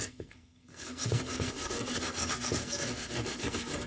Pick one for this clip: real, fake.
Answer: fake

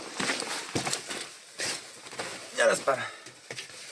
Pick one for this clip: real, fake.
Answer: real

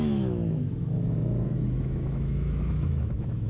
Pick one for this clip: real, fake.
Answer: fake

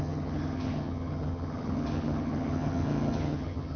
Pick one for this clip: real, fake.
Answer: fake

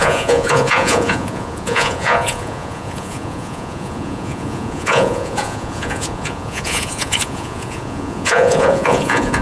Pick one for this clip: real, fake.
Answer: fake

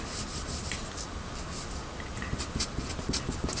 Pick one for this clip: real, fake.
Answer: real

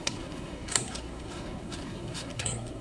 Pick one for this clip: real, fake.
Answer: fake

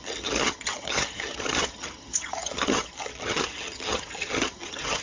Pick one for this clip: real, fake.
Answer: fake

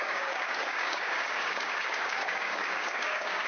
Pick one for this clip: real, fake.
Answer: fake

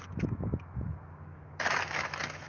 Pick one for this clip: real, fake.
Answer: fake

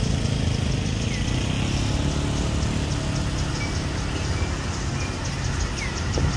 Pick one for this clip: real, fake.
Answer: real